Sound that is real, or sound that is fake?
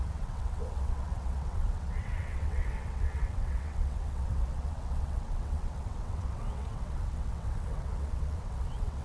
fake